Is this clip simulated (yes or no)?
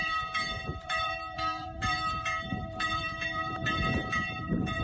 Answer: yes